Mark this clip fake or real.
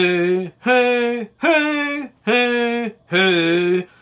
real